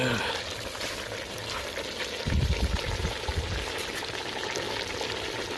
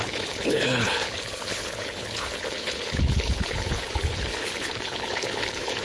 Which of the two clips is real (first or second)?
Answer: first